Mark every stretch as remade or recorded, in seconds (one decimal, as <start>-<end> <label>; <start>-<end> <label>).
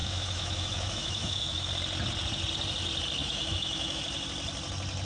0.0-1.7 remade; 1.7-3.2 recorded; 3.2-4.0 remade; 4.0-5.0 recorded